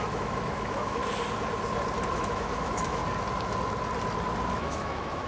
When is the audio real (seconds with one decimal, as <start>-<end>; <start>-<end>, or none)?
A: 1.0-2.1; 3.0-4.5